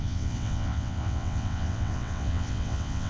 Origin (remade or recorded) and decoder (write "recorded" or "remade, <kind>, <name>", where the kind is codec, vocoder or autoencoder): remade, vocoder, WaveNeXt